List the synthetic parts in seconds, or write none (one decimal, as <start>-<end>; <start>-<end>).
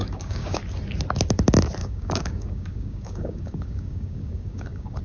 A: 0.0-0.6; 1.8-5.0